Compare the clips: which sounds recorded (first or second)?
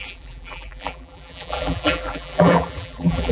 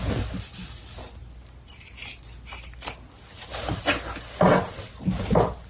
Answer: second